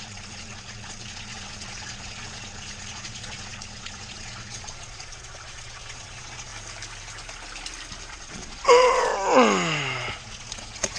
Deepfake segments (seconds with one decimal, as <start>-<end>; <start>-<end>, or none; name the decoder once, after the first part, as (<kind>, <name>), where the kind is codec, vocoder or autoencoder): 0.0-6.5 (vocoder, Vocos); 8.1-9.1; 10.2-11.0